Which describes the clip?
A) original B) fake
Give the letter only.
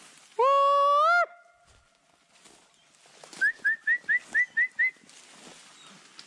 A